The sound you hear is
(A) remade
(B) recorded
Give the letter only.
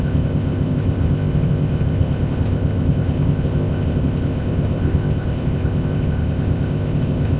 A